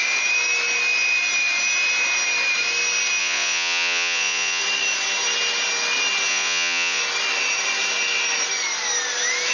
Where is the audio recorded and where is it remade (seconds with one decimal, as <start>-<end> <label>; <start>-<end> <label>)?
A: 0.0-3.2 recorded; 3.2-4.6 remade; 4.6-6.3 recorded; 6.3-7.0 remade; 7.0-9.5 recorded